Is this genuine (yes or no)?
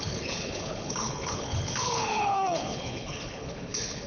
no